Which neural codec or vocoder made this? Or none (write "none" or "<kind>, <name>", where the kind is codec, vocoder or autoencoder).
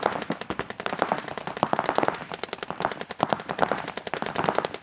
none